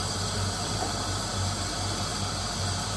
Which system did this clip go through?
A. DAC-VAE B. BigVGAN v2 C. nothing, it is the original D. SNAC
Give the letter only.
C